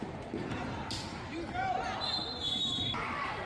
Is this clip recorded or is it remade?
recorded